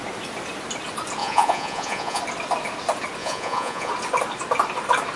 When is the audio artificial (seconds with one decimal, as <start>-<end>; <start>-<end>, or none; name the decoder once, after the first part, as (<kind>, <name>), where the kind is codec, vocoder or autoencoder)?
1.2-2.2 (vocoder, Vocos); 3.2-3.9